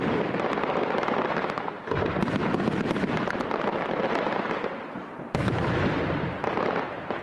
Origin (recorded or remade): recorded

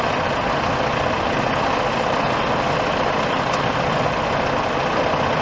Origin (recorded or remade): recorded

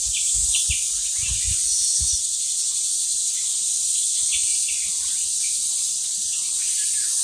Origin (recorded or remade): recorded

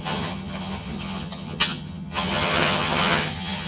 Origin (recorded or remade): remade